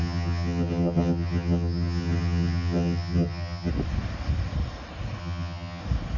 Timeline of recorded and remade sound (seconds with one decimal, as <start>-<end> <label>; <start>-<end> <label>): 0.0-3.7 remade; 3.7-5.2 recorded; 5.2-5.8 remade; 5.8-6.2 recorded